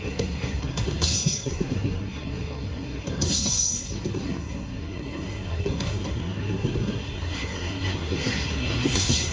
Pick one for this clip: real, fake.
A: fake